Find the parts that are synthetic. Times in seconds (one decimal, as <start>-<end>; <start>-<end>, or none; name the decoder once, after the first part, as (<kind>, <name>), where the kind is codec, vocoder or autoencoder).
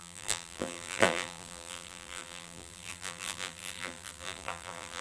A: 0.0-5.0 (vocoder, BigVGAN v2)